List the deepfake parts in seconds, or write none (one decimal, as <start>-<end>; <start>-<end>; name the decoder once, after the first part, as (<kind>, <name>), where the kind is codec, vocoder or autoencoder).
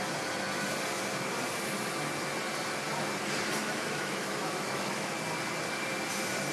3.6-5.1 (autoencoder, DAC-VAE)